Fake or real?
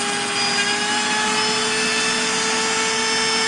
real